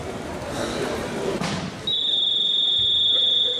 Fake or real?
real